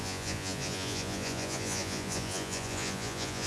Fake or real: fake